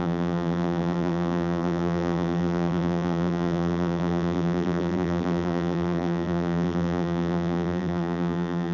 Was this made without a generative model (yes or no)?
no